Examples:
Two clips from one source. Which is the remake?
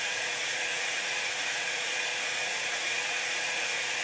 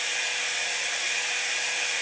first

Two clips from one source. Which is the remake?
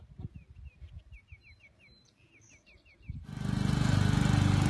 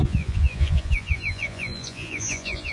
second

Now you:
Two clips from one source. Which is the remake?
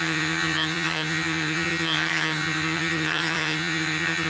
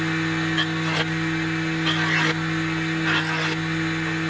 first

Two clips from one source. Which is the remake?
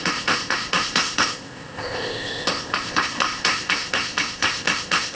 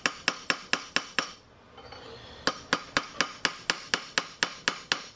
first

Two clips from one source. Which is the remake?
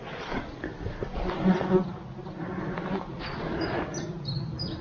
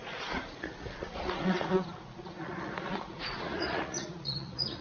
second